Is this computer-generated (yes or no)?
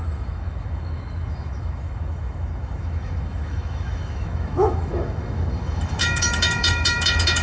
yes